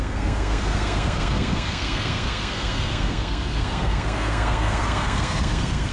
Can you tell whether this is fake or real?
fake